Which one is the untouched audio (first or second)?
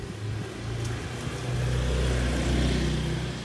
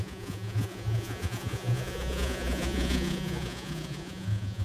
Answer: first